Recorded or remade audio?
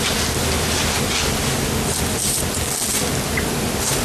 recorded